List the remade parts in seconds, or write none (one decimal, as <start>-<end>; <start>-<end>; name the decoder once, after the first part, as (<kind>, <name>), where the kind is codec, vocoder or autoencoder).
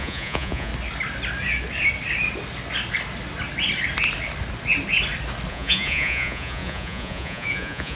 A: 0.0-0.7 (vocoder, Vocos); 5.5-8.0